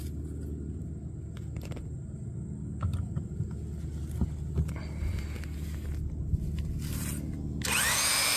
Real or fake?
real